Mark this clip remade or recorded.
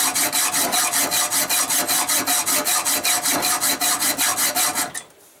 recorded